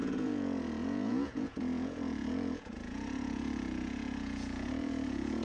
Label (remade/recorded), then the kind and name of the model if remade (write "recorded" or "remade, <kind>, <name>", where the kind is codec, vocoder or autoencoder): remade, vocoder, Vocos